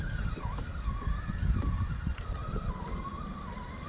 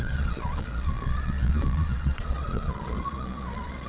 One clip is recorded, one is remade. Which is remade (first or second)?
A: second